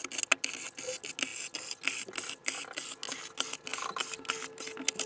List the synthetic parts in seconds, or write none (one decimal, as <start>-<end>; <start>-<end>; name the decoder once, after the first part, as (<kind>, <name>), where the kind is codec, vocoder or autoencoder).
none